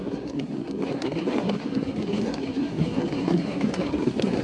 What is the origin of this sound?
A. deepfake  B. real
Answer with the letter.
A